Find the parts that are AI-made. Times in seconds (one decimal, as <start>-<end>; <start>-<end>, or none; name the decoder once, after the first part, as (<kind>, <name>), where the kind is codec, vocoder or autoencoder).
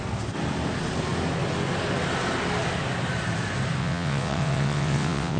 3.8-5.4 (vocoder, WaveNeXt)